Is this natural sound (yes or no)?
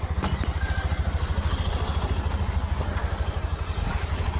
yes